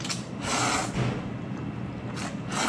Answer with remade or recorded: recorded